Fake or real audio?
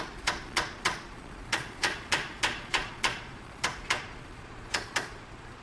fake